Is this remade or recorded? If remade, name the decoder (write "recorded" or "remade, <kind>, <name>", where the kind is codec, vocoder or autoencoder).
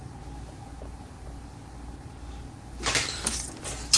recorded